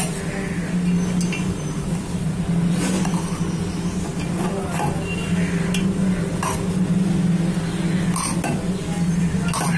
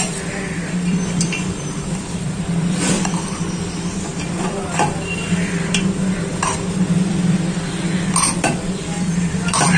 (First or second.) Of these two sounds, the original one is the first